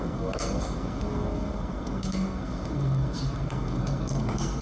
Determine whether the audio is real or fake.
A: fake